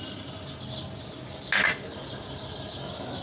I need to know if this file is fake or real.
real